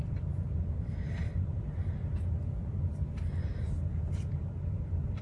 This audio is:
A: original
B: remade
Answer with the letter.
B